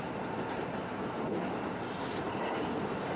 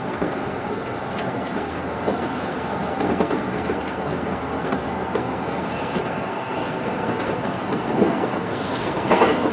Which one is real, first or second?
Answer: first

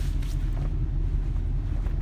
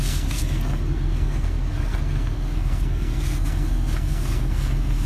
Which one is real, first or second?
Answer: first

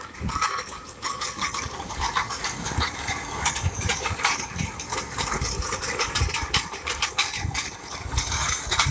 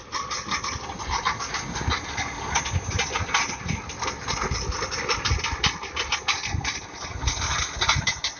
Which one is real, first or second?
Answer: second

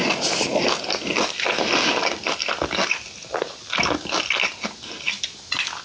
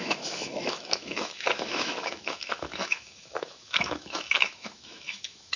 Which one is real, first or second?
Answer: first